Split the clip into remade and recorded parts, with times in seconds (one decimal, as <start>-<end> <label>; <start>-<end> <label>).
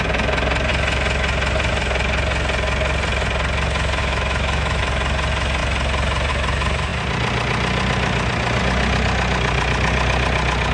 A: 0.0-4.0 recorded; 4.0-4.8 remade; 4.8-10.7 recorded